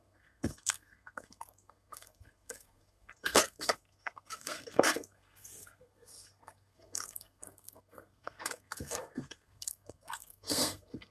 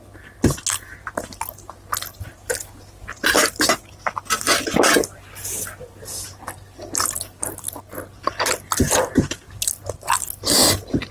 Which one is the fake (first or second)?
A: first